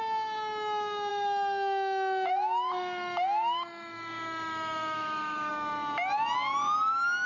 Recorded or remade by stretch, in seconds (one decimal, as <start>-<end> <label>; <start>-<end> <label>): 0.0-1.1 recorded; 1.1-5.5 remade; 5.5-7.3 recorded